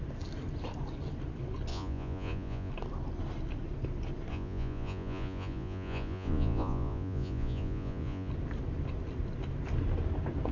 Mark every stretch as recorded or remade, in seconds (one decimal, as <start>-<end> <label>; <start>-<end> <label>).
0.0-1.7 recorded; 1.7-2.7 remade; 2.7-4.3 recorded; 4.3-8.3 remade; 8.3-10.5 recorded

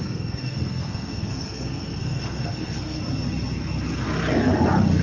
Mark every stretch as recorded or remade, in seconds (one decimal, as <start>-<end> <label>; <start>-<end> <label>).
0.0-3.0 remade; 3.0-5.0 recorded

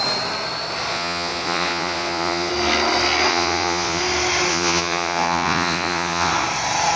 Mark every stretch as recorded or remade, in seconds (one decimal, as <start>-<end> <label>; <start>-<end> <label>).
0.0-0.9 recorded; 0.9-2.5 remade; 2.5-3.3 recorded; 3.3-4.0 remade; 4.0-4.5 recorded; 4.5-6.3 remade; 6.3-7.0 recorded

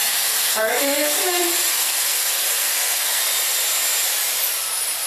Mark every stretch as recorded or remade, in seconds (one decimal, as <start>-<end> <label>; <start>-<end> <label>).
0.0-1.2 remade; 1.2-1.7 recorded; 1.7-3.2 remade; 3.2-5.1 recorded

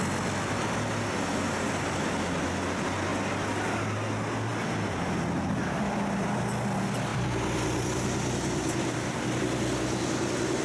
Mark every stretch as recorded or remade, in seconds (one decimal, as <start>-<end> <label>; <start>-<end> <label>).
0.0-10.6 recorded

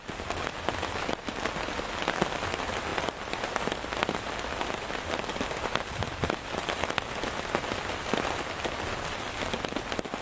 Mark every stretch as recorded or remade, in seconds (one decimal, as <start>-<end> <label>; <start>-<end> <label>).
0.0-2.9 recorded; 2.9-3.9 remade; 3.9-10.2 recorded

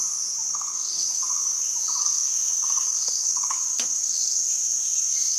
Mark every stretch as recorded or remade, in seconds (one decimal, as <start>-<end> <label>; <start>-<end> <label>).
0.0-0.5 recorded; 0.5-1.6 remade; 1.6-2.0 recorded; 2.0-5.4 remade